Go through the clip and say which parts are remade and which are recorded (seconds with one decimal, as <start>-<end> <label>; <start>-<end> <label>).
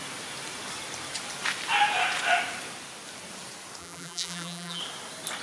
0.0-3.8 recorded; 3.8-4.8 remade; 4.8-5.4 recorded